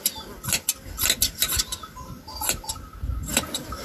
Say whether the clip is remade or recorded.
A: recorded